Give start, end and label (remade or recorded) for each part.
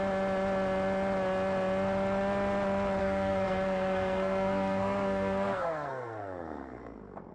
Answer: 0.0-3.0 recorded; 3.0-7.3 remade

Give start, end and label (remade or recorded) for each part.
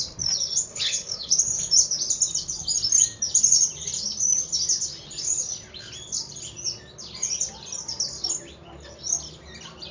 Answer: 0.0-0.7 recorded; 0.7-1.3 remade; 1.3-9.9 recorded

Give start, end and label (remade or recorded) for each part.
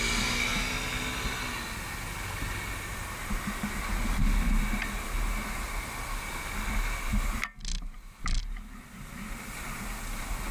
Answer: 0.0-10.5 recorded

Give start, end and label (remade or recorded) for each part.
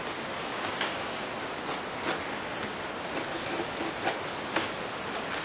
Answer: 0.0-0.5 recorded; 0.5-1.3 remade; 1.3-5.4 recorded